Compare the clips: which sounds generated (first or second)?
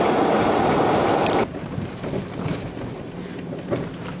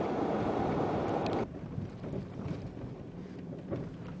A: second